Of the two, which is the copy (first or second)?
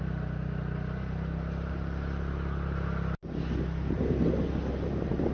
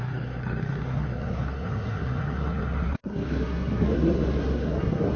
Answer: second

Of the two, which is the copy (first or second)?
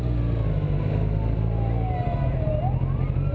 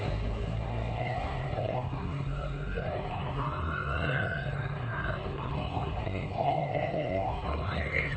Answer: second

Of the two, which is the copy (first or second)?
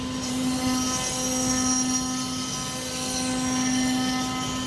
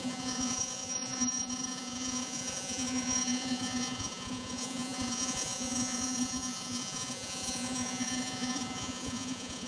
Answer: second